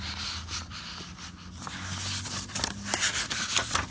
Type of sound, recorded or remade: recorded